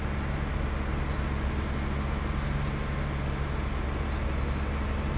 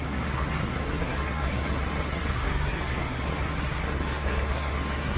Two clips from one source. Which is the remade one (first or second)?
second